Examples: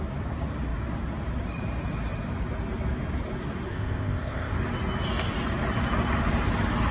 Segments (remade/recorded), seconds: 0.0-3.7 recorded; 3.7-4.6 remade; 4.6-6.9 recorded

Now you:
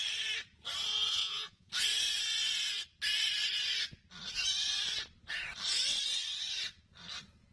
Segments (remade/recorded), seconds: 0.0-1.1 recorded; 1.1-1.7 remade; 1.7-7.5 recorded

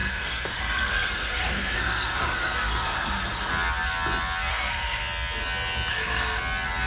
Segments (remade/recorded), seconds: 0.0-3.5 remade; 3.5-4.5 recorded; 4.5-5.0 remade; 5.0-5.9 recorded; 5.9-6.4 remade; 6.4-6.9 recorded

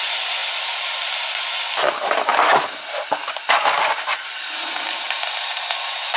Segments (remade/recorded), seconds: 0.0-6.2 recorded

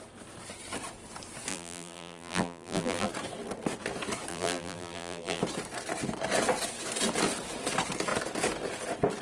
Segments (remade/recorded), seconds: 0.0-1.5 recorded; 1.5-3.1 remade; 3.1-4.3 recorded; 4.3-5.4 remade; 5.4-9.2 recorded